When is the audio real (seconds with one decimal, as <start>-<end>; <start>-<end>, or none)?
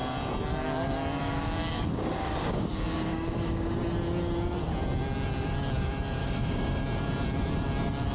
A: 0.0-1.2; 3.7-6.2; 6.8-8.1